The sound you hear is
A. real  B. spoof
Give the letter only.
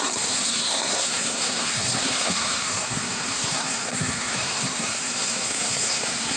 B